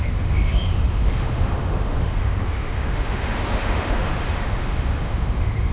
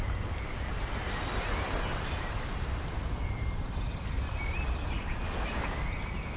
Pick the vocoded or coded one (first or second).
first